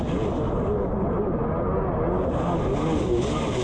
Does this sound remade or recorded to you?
recorded